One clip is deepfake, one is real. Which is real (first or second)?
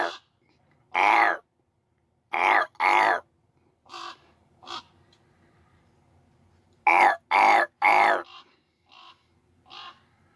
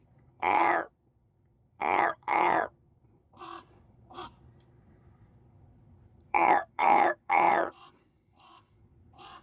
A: first